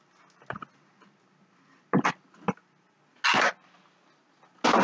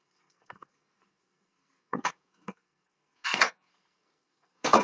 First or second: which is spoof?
second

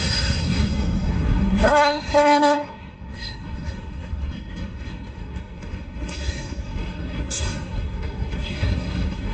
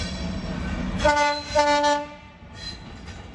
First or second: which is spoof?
first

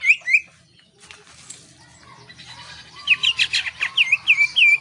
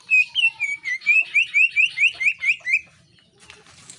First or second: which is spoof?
second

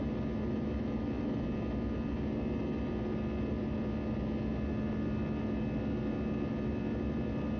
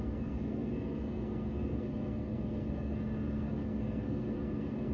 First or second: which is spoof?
second